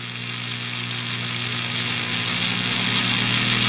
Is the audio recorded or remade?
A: recorded